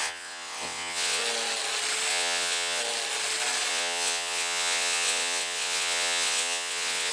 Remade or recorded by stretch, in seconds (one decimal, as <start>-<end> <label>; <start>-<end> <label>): 0.0-1.2 remade; 1.2-2.1 recorded; 2.1-2.8 remade; 2.8-3.7 recorded; 3.7-7.1 remade